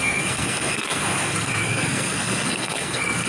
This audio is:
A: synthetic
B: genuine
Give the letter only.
A